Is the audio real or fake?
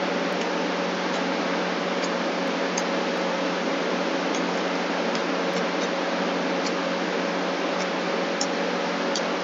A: real